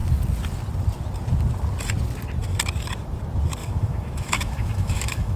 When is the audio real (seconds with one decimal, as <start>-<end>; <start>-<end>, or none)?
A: 0.0-3.6